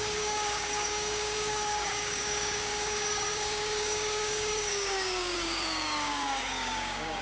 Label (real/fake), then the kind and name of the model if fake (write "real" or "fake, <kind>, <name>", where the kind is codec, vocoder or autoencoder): fake, codec, DAC